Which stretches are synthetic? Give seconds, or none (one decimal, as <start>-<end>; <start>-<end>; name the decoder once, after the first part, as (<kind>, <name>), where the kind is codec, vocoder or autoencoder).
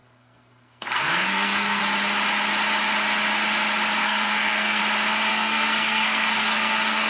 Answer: 0.0-1.8 (codec, SNAC); 4.0-4.8; 5.3-7.1